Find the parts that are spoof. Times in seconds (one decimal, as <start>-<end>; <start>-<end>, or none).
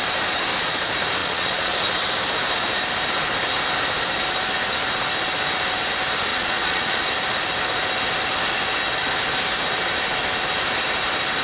1.2-1.7; 6.3-7.0